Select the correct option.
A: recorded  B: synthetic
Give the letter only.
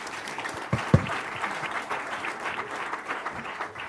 B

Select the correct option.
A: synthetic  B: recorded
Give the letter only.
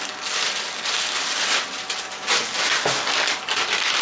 B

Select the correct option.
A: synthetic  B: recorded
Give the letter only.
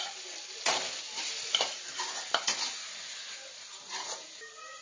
B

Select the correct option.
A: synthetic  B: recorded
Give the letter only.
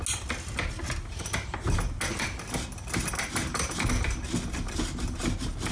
B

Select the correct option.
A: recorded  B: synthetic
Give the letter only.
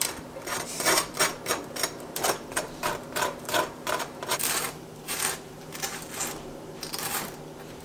B